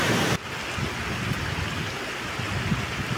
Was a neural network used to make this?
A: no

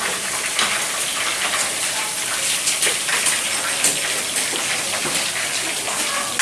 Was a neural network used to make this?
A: no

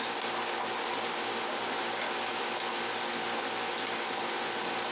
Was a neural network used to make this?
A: no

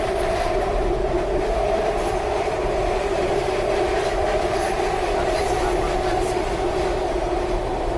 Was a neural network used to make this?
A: yes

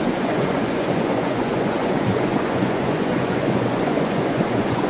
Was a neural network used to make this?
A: yes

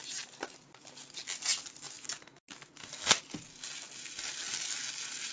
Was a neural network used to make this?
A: no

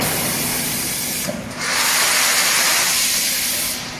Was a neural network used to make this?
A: no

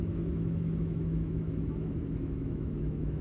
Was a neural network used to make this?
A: yes